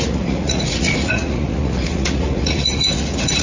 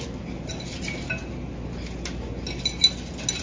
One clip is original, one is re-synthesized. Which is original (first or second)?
second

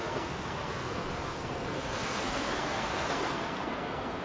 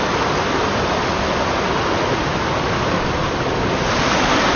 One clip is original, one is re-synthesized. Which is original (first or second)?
second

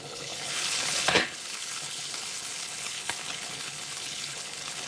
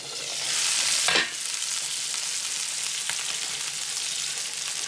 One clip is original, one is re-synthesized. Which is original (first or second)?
second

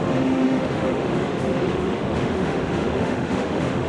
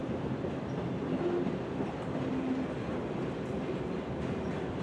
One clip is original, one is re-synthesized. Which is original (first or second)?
second